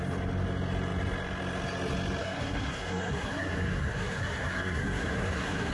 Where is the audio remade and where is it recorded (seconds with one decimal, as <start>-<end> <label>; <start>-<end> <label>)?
0.0-2.2 recorded; 2.2-5.7 remade